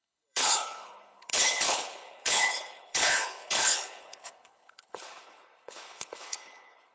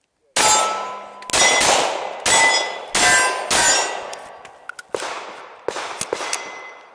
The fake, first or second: first